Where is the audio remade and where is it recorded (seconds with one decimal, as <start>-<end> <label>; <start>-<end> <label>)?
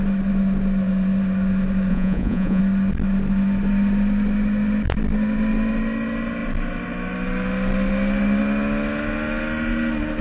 0.0-1.9 recorded; 1.9-2.6 remade; 2.6-10.2 recorded